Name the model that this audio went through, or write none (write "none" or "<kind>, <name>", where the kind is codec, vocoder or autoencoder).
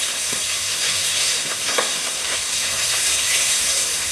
codec, SNAC